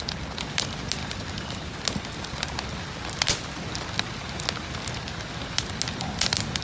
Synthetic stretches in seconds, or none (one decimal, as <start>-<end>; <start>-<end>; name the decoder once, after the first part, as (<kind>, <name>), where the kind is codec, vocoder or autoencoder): 1.0-1.6 (vocoder, BigVGAN v2)